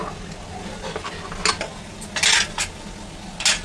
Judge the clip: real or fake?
real